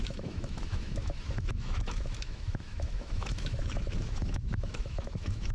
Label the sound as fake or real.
fake